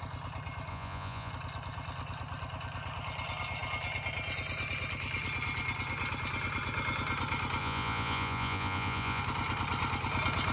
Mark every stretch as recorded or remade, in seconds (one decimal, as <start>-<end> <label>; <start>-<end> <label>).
0.0-0.7 recorded; 0.7-1.3 remade; 1.3-7.6 recorded; 7.6-9.2 remade; 9.2-10.5 recorded